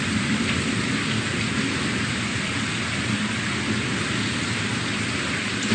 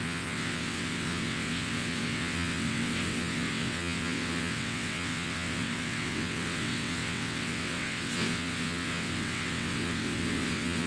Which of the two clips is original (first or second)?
first